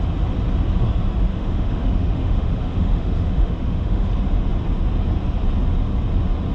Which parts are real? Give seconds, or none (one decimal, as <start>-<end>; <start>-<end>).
0.0-1.3; 4.1-6.5